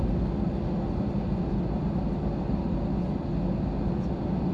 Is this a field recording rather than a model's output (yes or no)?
yes